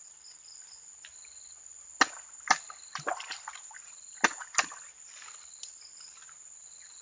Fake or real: real